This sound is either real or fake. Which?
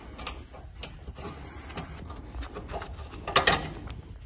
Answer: real